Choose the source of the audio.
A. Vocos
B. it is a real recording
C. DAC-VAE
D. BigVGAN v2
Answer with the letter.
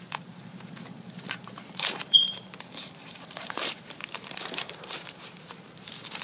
D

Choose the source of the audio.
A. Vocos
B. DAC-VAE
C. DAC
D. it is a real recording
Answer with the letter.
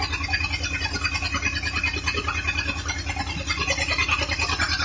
D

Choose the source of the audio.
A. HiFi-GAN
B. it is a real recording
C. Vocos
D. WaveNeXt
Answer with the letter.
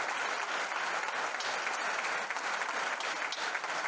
B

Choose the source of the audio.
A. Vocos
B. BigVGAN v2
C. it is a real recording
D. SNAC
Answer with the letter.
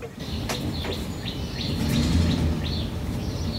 C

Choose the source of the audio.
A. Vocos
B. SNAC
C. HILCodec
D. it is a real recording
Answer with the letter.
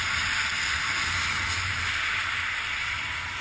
D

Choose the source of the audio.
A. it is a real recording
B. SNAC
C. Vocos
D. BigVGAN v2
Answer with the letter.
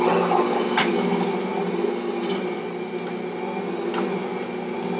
A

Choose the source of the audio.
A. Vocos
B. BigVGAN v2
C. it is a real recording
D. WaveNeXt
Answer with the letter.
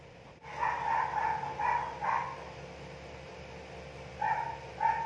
C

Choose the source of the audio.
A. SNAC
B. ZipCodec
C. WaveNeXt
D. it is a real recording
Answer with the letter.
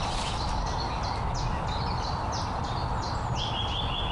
D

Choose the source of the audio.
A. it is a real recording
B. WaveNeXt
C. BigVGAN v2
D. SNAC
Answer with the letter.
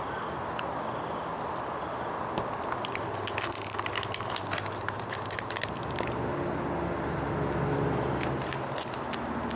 A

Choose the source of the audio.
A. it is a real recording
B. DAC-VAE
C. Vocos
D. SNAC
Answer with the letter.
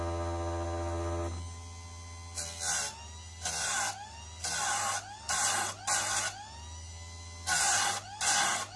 A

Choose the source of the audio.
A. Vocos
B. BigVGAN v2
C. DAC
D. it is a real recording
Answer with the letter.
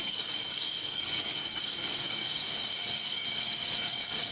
C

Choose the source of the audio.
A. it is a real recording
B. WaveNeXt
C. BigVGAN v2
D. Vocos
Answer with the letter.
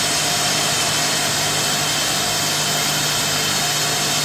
A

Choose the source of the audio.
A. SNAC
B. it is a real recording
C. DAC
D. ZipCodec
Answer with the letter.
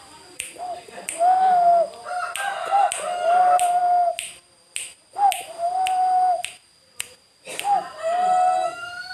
B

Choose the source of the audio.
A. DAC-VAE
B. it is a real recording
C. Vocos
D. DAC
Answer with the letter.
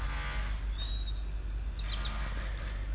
B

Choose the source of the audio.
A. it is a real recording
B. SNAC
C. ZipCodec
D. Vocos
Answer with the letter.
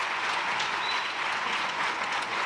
D